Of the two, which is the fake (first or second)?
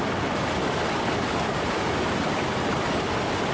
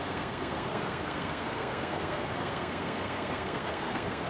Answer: second